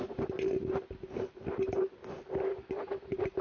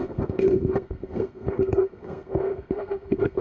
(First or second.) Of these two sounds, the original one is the first